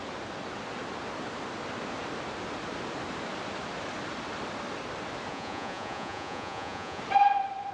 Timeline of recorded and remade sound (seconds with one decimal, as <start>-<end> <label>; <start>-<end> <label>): 0.0-5.3 recorded; 5.3-7.0 remade; 7.0-7.7 recorded